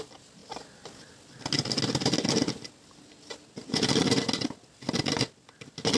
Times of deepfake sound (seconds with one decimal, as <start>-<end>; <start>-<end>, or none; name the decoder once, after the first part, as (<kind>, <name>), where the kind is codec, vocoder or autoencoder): none